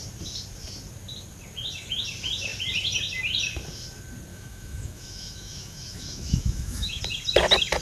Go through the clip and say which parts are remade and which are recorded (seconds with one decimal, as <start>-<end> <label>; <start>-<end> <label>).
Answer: 0.0-4.3 recorded; 4.3-7.0 remade; 7.0-7.8 recorded